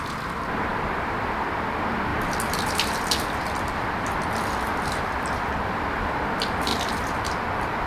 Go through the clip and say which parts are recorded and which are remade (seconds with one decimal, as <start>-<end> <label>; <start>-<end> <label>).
0.0-2.1 recorded; 2.1-5.4 remade; 5.4-6.7 recorded; 6.7-7.9 remade